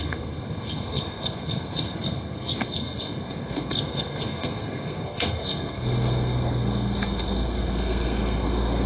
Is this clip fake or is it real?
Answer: fake